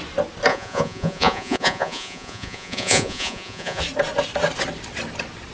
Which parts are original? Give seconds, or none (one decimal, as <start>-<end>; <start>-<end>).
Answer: 0.0-0.5; 3.8-5.5